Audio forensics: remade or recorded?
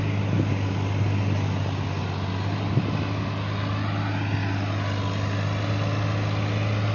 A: recorded